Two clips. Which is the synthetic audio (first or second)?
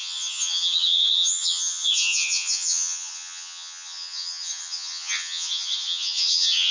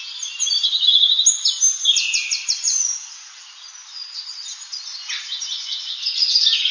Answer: first